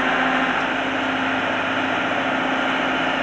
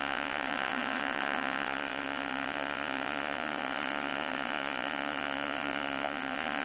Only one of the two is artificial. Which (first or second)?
second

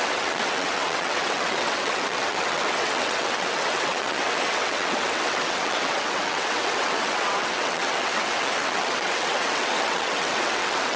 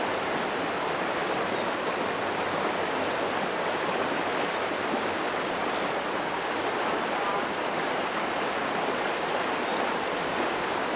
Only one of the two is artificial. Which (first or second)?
first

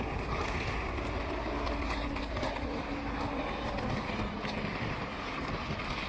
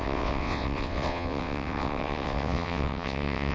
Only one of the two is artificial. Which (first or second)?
second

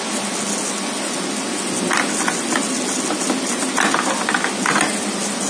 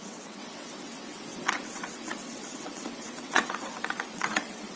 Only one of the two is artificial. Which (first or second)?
second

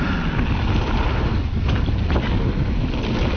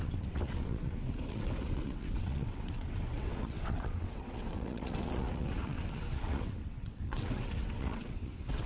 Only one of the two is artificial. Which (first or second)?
second